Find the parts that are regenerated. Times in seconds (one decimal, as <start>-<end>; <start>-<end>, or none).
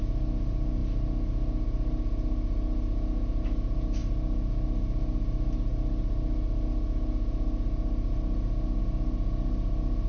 none